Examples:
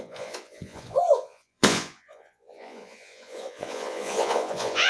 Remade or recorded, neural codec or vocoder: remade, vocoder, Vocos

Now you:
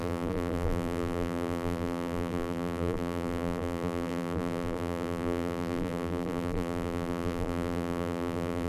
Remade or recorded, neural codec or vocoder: remade, vocoder, BigVGAN v2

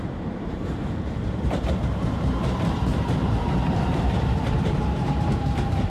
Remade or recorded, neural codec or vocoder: remade, vocoder, BigVGAN v2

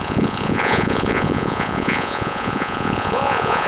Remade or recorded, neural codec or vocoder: remade, vocoder, Vocos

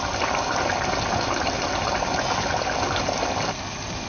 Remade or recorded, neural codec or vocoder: recorded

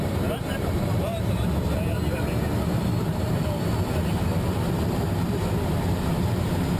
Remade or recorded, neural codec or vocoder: remade, vocoder, BigVGAN v2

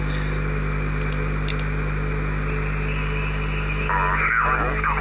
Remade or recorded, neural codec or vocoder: recorded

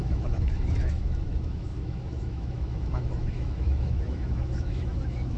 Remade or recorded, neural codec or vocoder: remade, autoencoder, DAC-VAE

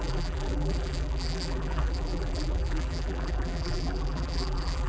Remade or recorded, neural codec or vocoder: remade, vocoder, BigVGAN v2